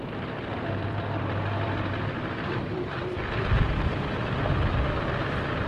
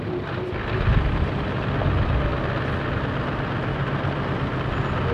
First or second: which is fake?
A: first